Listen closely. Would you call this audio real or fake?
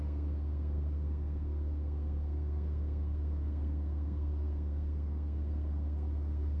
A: fake